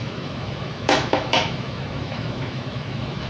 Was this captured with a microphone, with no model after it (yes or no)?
no